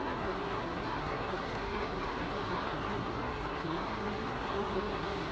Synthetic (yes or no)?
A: yes